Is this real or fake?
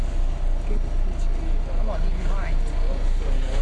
real